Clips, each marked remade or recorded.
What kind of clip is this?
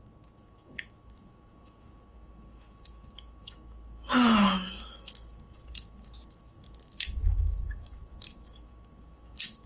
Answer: remade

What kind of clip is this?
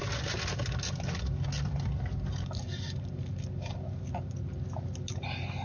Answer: recorded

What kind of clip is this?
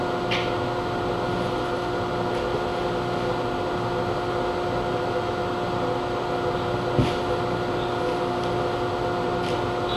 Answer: recorded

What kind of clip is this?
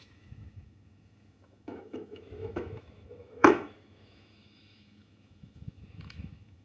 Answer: remade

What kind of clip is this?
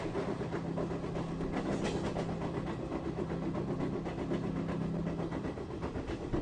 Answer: recorded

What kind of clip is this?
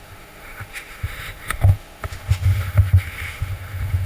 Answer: remade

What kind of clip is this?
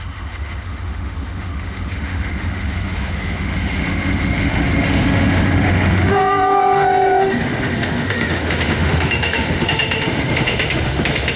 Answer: remade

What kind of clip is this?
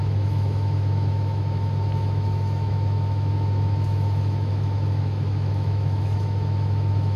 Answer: remade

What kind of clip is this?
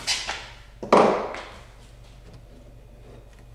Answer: recorded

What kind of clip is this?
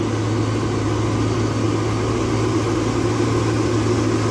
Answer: recorded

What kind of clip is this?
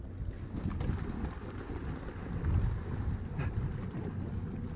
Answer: recorded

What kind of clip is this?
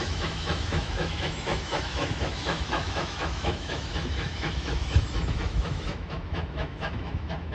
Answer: remade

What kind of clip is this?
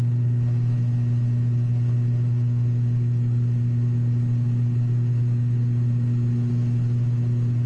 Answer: recorded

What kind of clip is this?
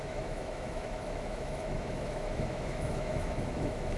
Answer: remade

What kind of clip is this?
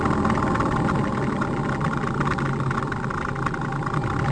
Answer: recorded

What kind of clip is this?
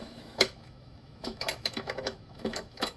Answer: remade